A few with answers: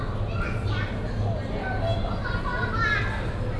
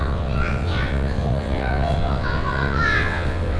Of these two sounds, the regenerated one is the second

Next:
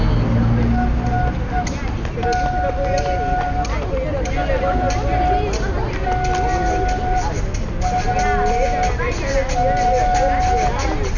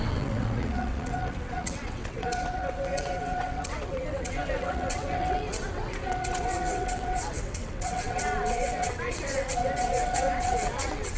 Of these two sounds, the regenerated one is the second